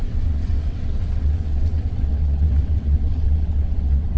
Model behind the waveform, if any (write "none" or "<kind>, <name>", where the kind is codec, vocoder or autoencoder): vocoder, WaveNeXt